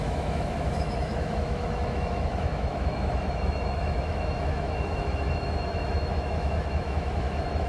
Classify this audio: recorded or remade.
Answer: remade